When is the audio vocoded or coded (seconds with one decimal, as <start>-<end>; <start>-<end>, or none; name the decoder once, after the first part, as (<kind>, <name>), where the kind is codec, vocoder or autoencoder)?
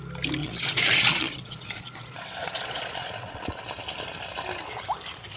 0.4-3.6 (vocoder, Vocos)